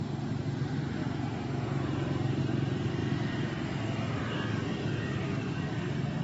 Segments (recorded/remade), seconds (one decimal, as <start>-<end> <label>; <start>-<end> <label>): 0.0-6.2 recorded